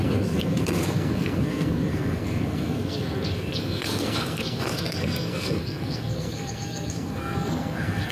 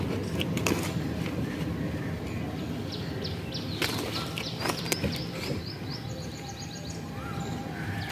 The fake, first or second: first